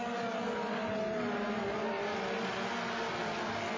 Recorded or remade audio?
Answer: recorded